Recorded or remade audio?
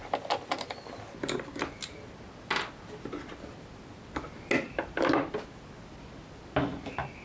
recorded